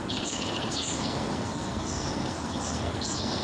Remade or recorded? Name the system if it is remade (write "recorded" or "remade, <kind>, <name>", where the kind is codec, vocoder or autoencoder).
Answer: remade, codec, SNAC